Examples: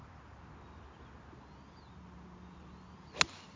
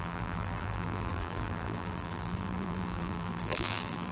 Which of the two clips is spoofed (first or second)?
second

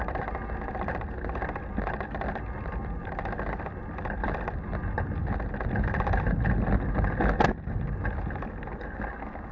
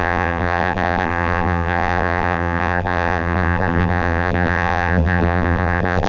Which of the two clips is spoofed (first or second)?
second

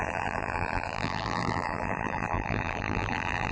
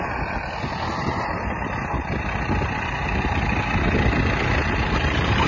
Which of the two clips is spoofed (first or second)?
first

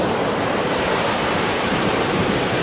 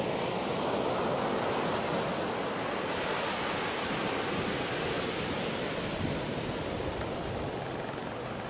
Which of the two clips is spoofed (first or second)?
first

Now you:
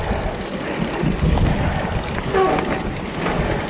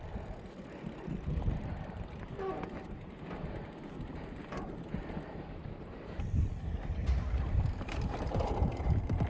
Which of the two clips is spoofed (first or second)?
second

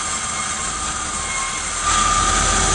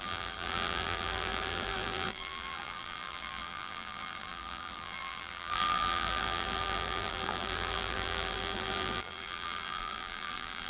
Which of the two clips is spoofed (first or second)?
second